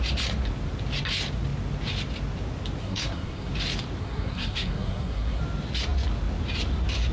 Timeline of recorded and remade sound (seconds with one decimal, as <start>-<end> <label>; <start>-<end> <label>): 0.0-2.8 recorded; 2.8-3.5 remade; 3.5-4.0 recorded; 4.0-5.4 remade; 5.4-7.1 recorded